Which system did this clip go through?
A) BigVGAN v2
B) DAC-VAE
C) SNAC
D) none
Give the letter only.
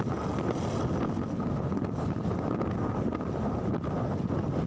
D